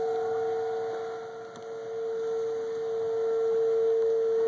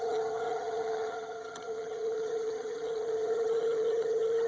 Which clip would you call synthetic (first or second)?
second